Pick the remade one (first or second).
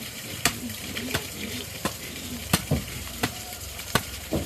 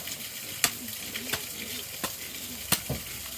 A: first